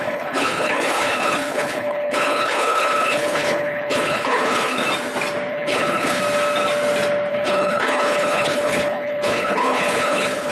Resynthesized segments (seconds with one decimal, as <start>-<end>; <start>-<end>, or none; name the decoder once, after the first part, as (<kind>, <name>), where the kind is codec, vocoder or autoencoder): 0.0-4.8 (codec, HILCodec); 5.5-6.2; 7.3-10.5